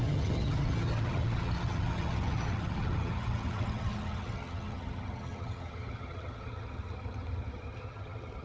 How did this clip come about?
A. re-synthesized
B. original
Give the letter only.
A